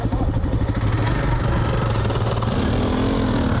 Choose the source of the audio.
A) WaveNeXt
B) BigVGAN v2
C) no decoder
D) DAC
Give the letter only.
C